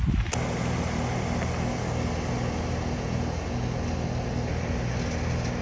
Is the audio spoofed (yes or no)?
no